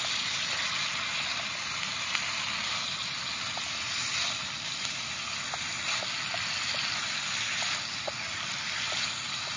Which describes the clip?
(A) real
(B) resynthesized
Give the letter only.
A